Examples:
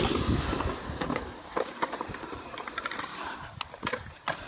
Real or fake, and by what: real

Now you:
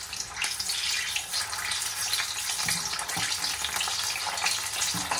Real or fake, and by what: real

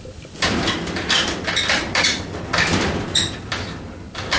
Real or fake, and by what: fake, vocoder, BigVGAN v2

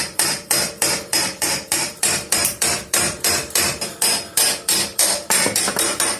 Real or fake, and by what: fake, vocoder, BigVGAN v2